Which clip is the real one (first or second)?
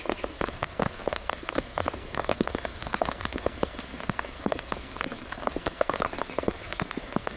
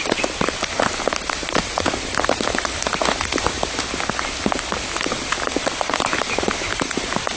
second